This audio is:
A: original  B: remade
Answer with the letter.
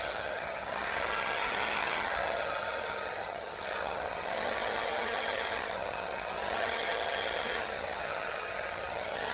B